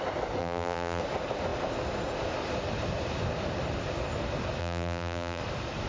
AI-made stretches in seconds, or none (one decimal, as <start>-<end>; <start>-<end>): 0.4-1.0; 4.6-5.4